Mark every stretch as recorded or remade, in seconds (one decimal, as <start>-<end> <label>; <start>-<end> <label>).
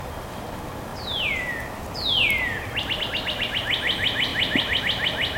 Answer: 0.0-5.4 recorded